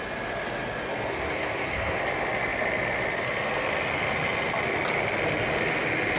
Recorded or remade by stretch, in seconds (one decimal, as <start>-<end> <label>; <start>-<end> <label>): 0.0-1.1 recorded; 1.1-2.0 remade; 2.0-6.2 recorded